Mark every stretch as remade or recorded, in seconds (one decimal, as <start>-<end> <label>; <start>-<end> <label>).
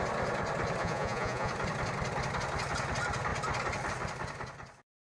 0.0-0.8 recorded; 0.8-1.5 remade; 1.5-5.1 recorded